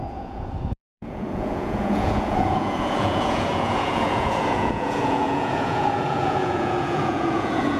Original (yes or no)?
no